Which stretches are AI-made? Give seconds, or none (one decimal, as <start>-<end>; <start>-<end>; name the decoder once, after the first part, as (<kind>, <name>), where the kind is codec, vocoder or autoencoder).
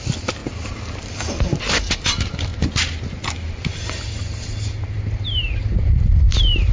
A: none